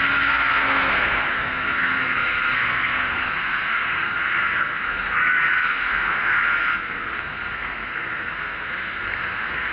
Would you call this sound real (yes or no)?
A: no